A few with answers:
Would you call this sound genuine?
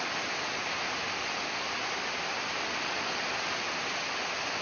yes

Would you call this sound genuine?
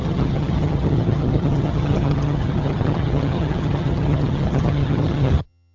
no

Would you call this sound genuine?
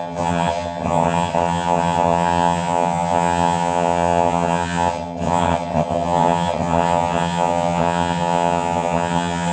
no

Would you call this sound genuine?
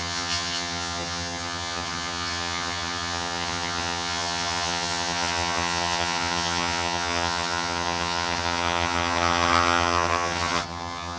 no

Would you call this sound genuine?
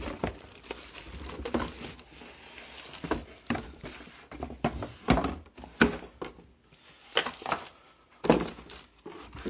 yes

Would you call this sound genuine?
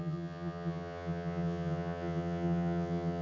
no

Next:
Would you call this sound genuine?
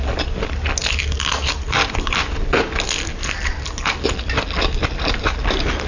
yes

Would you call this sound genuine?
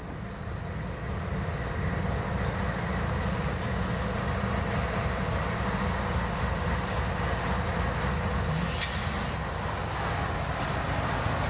yes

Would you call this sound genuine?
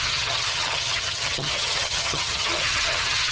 no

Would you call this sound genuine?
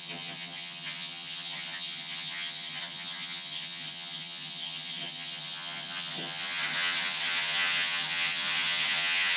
no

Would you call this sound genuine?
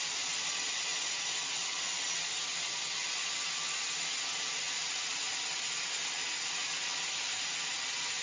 yes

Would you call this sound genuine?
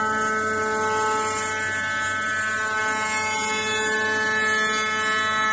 yes